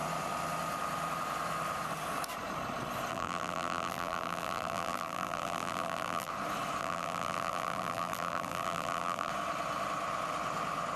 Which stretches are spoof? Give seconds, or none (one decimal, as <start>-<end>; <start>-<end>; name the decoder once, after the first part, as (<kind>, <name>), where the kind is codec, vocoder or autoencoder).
3.1-6.3 (vocoder, BigVGAN v2); 6.8-9.3